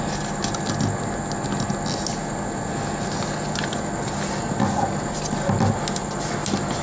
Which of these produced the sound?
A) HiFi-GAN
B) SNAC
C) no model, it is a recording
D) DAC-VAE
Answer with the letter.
C